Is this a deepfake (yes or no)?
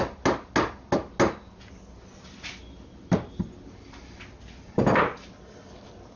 no